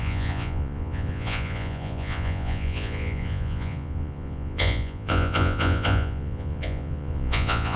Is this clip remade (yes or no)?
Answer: yes